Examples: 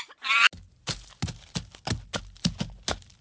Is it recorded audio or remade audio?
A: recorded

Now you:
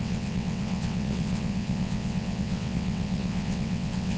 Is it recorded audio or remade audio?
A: remade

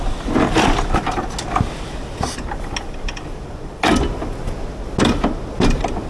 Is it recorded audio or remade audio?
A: recorded